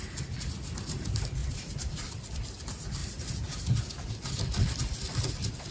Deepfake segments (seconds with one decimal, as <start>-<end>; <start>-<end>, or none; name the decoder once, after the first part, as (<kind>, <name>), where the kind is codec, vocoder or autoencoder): 1.4-2.4 (vocoder, BigVGAN v2); 3.0-5.2